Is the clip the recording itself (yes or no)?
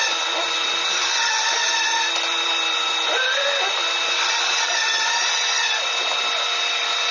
yes